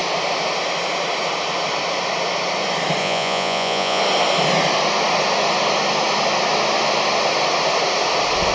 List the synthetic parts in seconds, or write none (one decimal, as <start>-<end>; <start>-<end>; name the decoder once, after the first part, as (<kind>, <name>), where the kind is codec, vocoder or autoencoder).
3.0-4.0 (vocoder, Vocos)